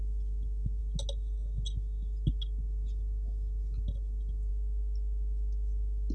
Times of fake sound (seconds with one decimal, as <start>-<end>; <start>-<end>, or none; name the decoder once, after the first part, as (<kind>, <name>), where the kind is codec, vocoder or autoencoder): none